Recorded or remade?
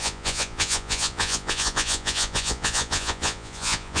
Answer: remade